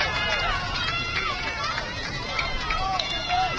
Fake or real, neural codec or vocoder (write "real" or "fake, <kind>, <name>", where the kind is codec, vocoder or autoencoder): fake, vocoder, Vocos